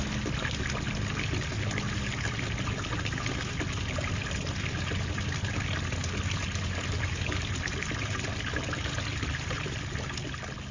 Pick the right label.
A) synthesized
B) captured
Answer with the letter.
B